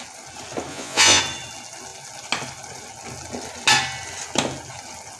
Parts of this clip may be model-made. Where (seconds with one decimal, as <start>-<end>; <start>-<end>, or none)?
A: 0.7-1.2